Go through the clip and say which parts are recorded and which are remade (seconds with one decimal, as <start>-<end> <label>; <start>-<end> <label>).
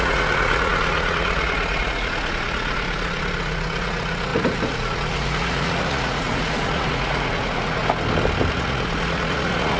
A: 0.0-7.8 remade; 7.8-8.5 recorded; 8.5-9.8 remade